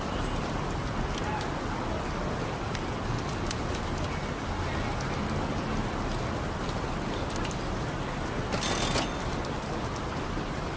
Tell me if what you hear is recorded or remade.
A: recorded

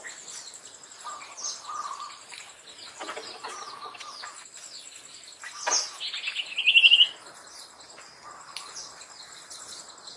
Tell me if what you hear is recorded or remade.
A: recorded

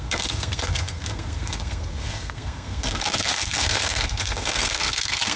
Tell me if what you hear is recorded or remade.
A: remade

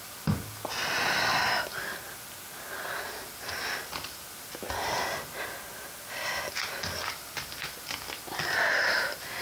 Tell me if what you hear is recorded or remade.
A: recorded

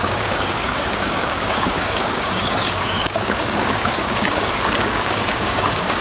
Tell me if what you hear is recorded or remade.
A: remade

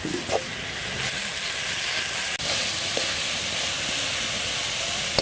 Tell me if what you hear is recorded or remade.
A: recorded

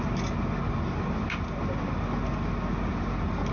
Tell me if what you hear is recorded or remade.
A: recorded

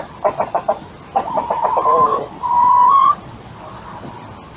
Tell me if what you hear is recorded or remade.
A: recorded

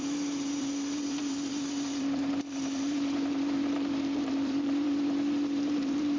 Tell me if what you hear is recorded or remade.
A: remade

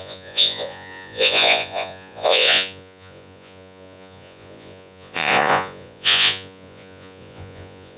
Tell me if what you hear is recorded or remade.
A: remade